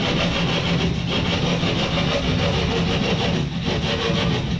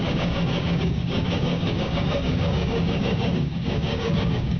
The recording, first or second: first